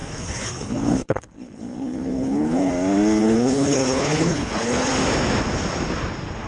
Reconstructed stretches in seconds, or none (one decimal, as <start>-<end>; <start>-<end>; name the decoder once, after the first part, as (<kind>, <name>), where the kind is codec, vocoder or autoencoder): 0.0-2.7 (codec, HILCodec); 3.2-4.9